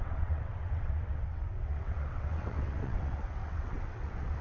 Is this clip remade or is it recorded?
remade